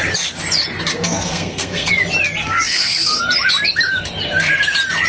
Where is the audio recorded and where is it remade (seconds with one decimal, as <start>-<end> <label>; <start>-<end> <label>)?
0.0-0.9 recorded; 0.9-1.9 remade; 1.9-2.4 recorded; 2.4-3.2 remade; 3.2-5.1 recorded